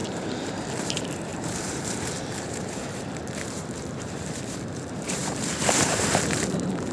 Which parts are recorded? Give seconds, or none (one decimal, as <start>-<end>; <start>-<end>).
none

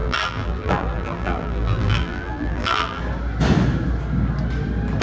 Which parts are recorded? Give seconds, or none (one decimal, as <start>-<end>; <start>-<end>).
3.0-5.0